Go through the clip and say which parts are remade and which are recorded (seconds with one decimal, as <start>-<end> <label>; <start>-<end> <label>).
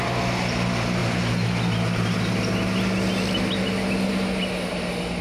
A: 0.0-5.2 recorded